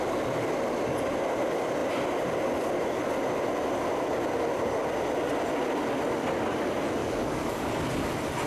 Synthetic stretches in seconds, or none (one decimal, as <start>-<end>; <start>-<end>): 7.0-7.7